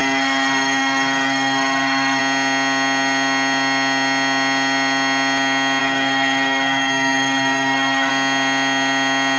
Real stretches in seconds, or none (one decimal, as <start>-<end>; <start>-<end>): 2.2-5.8; 8.1-9.4